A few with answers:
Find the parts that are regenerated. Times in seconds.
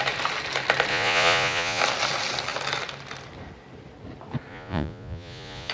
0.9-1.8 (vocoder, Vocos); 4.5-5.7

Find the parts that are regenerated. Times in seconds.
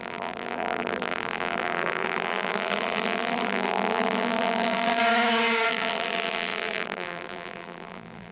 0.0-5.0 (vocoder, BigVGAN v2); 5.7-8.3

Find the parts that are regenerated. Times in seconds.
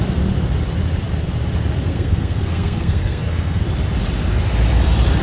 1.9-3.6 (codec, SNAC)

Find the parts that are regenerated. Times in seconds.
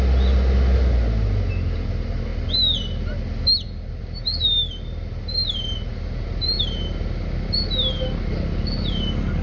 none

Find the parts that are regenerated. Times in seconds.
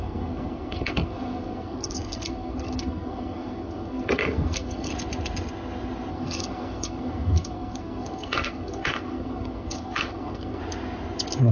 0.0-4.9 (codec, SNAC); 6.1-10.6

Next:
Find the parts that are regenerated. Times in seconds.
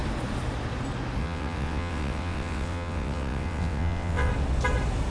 1.2-4.3 (vocoder, WaveNeXt)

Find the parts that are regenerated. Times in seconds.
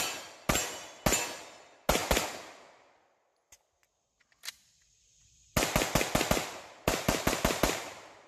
none